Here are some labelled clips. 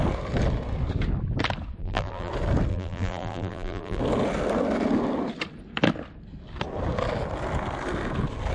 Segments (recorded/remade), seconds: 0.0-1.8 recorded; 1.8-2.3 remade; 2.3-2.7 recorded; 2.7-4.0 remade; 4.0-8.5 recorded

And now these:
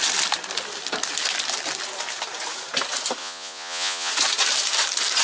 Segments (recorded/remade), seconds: 0.0-3.2 recorded; 3.2-4.1 remade; 4.1-5.2 recorded

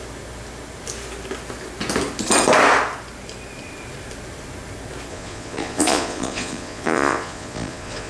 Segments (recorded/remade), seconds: 0.0-5.1 recorded; 5.1-8.1 remade

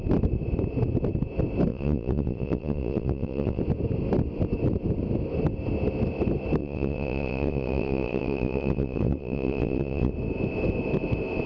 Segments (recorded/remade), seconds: 0.0-1.7 recorded; 1.7-3.6 remade; 3.6-6.6 recorded; 6.6-10.1 remade; 10.1-11.5 recorded

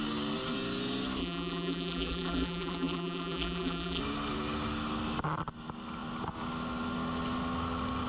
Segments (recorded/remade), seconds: 0.0-1.2 recorded; 1.2-4.0 remade; 4.0-8.1 recorded